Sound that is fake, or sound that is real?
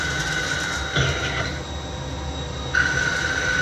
real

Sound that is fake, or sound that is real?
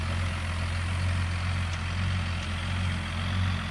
real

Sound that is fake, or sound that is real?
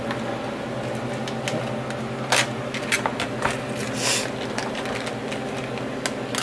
real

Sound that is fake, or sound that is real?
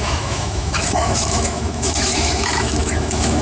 fake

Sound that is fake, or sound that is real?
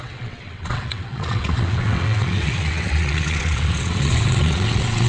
fake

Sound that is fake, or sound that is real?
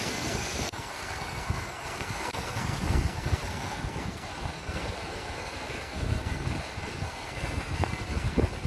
fake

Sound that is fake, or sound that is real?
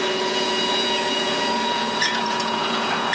fake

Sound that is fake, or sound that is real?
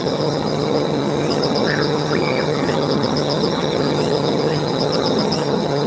fake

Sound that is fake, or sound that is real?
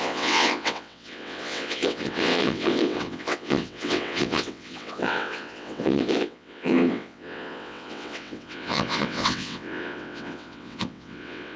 fake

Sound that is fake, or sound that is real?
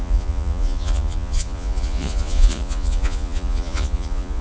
fake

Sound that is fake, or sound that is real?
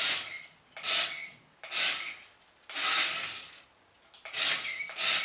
real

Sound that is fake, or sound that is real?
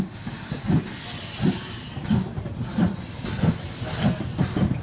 real